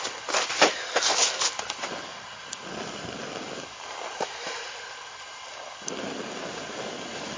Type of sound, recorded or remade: recorded